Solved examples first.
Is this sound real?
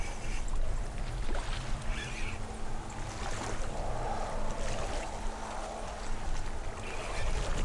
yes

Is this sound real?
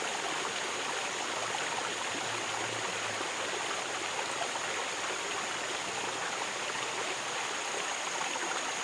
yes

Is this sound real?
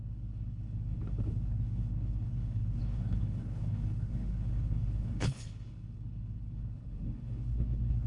no